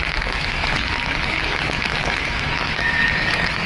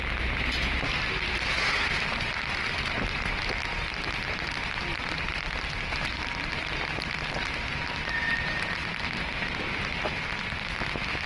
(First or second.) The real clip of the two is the second